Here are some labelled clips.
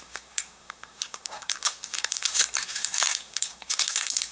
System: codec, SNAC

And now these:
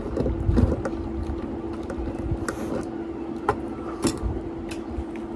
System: none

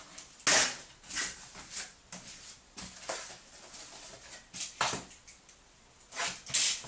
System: none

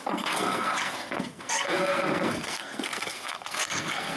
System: codec, SNAC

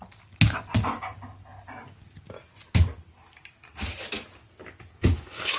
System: none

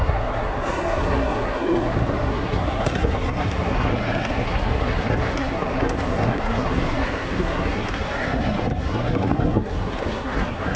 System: codec, SNAC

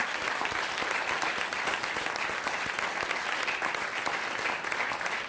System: none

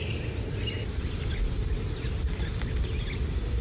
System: none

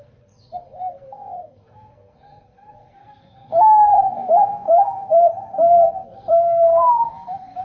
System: codec, SNAC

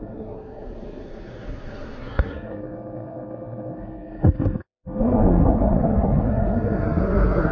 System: codec, SNAC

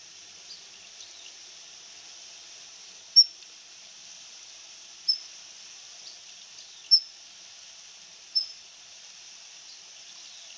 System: none